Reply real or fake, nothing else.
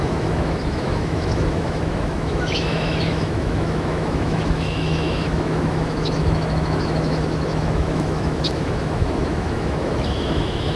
fake